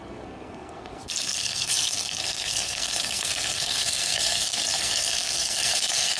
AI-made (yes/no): yes